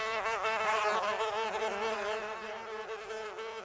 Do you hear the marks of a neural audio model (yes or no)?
no